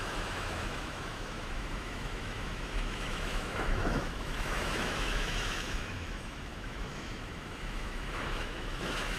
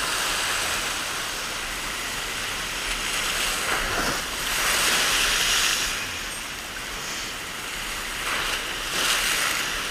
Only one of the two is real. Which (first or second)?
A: second